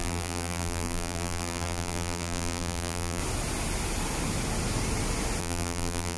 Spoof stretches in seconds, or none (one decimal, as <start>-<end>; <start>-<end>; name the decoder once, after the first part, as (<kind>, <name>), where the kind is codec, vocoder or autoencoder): 0.0-3.2 (vocoder, BigVGAN v2); 5.4-6.2